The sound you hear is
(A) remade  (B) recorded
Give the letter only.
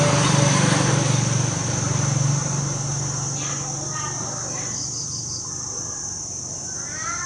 B